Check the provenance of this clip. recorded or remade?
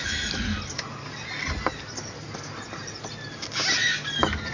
recorded